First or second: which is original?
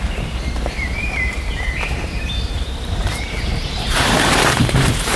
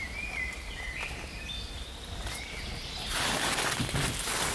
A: second